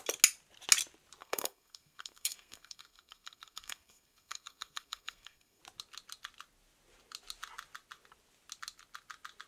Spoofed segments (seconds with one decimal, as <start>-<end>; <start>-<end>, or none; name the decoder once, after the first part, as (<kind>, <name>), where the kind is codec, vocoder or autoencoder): 1.2-5.6 (codec, SNAC)